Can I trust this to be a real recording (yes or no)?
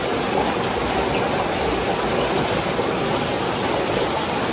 yes